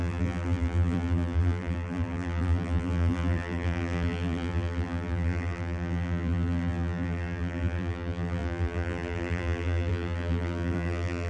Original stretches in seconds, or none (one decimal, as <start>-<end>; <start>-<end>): none